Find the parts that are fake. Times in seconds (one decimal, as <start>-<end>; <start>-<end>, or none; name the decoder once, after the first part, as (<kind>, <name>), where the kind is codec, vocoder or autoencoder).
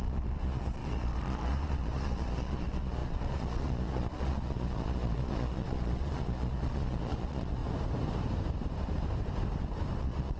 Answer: 0.0-7.6 (vocoder, Vocos); 10.0-10.4